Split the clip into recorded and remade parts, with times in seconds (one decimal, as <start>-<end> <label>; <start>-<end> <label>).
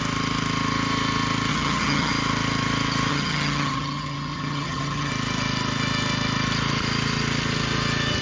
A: 0.0-1.5 recorded; 1.5-2.1 remade; 2.1-3.1 recorded; 3.1-5.1 remade; 5.1-8.2 recorded